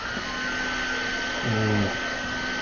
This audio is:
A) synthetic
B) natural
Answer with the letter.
B